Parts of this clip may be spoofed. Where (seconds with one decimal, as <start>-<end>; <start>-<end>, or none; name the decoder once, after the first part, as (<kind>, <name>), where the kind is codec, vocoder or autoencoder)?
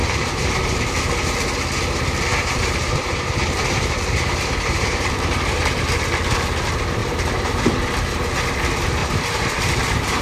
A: 0.0-0.8 (vocoder, BigVGAN v2); 2.3-5.5; 7.0-7.7; 9.0-10.2